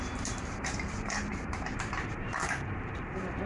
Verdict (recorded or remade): remade